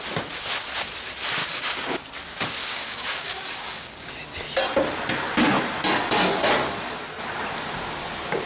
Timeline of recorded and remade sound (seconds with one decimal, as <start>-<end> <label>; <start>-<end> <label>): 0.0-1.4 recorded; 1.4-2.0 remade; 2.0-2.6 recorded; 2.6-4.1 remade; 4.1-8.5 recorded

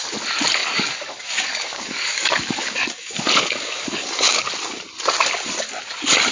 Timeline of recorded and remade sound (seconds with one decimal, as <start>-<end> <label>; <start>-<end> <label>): 0.0-0.6 recorded; 0.6-4.4 remade; 4.4-6.3 recorded

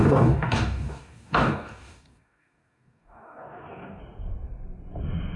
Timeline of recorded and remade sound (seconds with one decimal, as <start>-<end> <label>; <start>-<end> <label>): 0.0-4.0 remade; 4.0-5.4 recorded

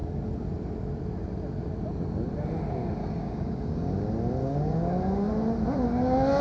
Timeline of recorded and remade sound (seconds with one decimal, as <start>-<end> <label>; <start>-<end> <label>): 0.0-3.0 recorded; 3.0-3.9 remade; 3.9-4.4 recorded; 4.4-5.3 remade; 5.3-6.4 recorded